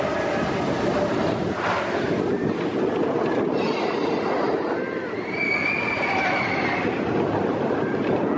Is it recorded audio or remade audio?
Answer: recorded